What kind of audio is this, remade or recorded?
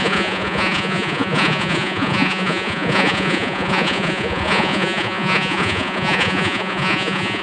remade